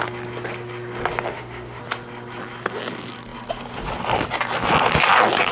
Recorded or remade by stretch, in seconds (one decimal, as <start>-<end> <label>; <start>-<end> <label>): 0.0-1.3 recorded; 1.3-1.8 remade; 1.8-5.5 recorded